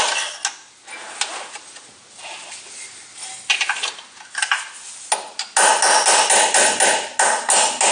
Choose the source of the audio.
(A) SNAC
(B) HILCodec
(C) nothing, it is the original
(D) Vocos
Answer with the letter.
C